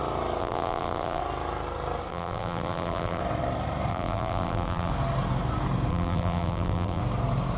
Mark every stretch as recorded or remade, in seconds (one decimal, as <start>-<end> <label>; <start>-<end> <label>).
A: 0.0-0.4 recorded; 0.4-1.2 remade; 1.2-2.1 recorded; 2.1-3.2 remade; 3.2-3.9 recorded; 3.9-4.9 remade; 4.9-5.9 recorded; 5.9-7.0 remade; 7.0-7.6 recorded